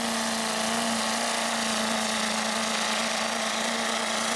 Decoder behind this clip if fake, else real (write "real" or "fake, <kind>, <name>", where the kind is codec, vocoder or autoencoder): real